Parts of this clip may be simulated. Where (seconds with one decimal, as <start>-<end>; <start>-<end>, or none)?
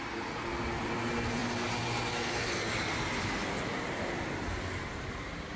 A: none